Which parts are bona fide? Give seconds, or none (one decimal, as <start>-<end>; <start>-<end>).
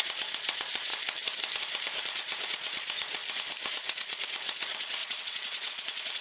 0.9-1.6; 3.2-3.7